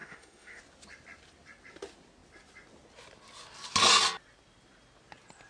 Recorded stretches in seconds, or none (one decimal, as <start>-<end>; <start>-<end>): 0.6-5.5